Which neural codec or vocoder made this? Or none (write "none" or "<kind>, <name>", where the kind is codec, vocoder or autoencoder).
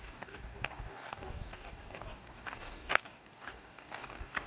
codec, DAC